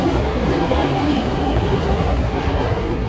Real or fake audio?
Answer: fake